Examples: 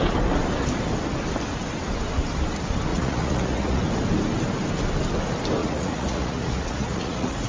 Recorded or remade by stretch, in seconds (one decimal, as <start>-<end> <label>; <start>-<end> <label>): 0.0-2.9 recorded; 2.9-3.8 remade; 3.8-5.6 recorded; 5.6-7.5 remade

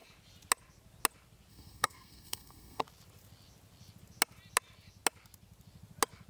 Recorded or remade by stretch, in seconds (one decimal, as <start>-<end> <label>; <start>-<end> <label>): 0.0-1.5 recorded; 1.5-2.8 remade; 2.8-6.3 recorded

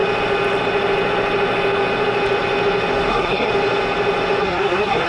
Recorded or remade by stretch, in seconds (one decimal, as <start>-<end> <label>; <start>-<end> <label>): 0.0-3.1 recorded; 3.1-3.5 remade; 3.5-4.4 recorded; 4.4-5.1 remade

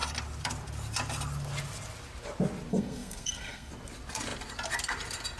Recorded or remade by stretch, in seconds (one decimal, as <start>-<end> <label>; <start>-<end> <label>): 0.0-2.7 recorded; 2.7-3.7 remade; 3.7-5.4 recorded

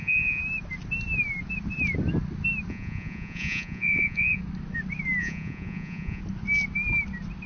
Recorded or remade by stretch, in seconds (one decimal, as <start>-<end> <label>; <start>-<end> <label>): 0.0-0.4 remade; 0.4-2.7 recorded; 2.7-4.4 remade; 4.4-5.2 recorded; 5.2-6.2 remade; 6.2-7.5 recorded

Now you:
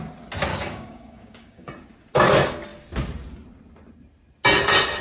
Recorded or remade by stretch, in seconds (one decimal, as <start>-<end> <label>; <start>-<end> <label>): 0.0-0.5 recorded; 0.5-1.7 remade; 1.7-5.0 recorded

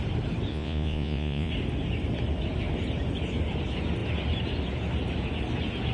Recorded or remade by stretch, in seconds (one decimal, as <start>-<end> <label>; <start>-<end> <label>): 0.0-0.5 recorded; 0.5-1.5 remade; 1.5-5.9 recorded